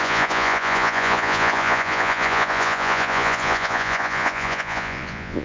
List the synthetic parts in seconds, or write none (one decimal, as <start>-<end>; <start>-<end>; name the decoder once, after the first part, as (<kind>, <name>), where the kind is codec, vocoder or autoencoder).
0.0-5.4 (vocoder, Vocos)